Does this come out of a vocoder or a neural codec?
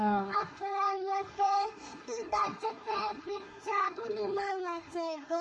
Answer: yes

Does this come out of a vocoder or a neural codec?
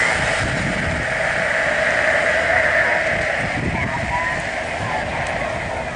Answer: no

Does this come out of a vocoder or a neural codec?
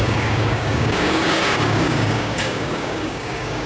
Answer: yes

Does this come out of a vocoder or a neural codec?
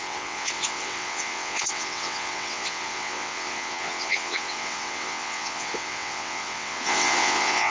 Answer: yes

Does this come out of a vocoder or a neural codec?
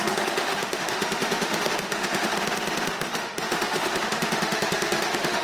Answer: yes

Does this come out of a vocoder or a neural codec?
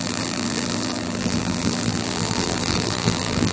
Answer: yes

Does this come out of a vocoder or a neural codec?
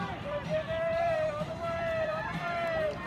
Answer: yes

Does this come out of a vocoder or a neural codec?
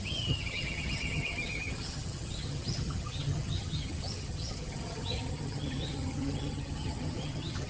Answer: yes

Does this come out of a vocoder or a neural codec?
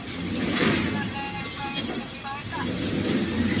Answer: no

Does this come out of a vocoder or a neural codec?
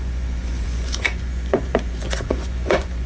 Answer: yes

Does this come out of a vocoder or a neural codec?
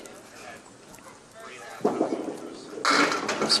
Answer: no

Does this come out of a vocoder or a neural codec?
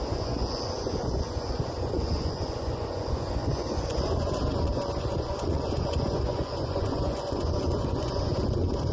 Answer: yes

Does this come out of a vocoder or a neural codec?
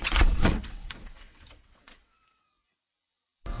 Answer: yes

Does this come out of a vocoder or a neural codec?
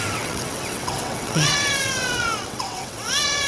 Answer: yes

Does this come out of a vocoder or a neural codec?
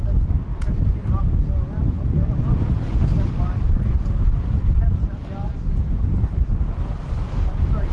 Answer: no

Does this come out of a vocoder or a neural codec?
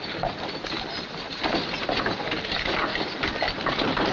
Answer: yes